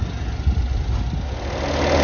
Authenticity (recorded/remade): recorded